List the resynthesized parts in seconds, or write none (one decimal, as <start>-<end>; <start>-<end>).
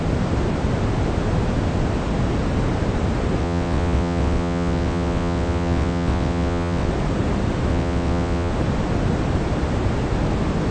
3.4-6.9; 7.7-8.5